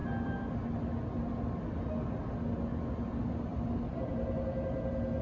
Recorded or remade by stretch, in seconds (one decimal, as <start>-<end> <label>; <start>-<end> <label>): 0.0-5.2 recorded